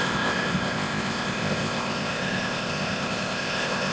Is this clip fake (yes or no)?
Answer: yes